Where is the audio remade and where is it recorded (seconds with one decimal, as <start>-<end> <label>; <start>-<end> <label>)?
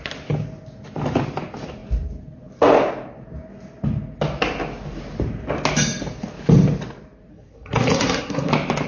0.0-7.3 recorded; 7.3-8.5 remade; 8.5-8.9 recorded